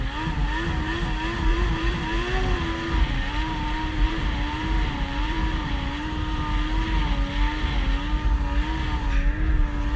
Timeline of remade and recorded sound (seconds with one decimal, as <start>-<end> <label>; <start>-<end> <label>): 0.0-1.5 recorded; 1.5-6.4 remade; 6.4-10.0 recorded